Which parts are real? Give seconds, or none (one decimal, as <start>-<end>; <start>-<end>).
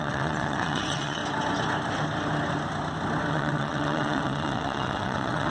1.2-3.3